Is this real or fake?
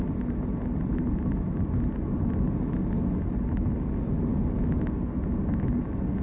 real